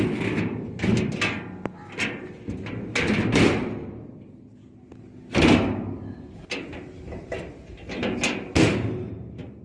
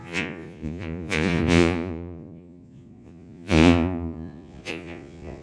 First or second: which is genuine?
first